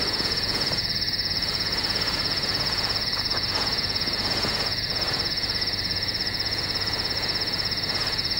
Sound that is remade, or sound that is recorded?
remade